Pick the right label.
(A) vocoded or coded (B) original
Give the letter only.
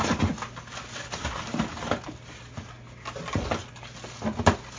B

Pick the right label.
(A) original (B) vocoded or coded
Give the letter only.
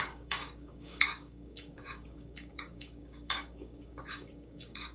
B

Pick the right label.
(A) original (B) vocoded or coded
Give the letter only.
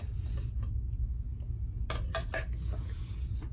A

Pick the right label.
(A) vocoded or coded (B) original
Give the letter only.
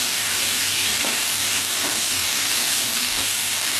A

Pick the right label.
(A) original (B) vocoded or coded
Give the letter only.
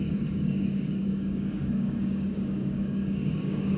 B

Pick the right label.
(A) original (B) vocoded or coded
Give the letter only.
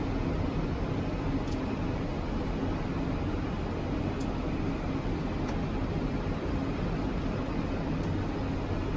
A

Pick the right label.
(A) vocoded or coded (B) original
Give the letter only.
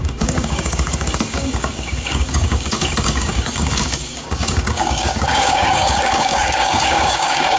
A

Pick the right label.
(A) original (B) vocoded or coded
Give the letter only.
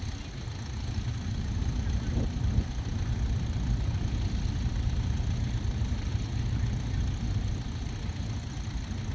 A